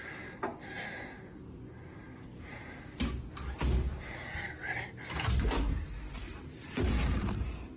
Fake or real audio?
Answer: real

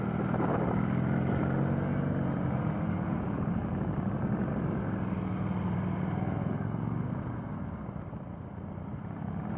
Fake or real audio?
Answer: real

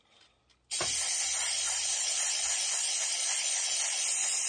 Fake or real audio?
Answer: real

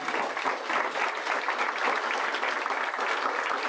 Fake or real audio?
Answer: real